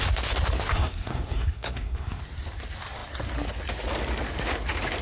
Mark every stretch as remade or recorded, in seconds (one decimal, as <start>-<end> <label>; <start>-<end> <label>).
0.0-0.7 recorded; 0.7-2.2 remade; 2.2-5.0 recorded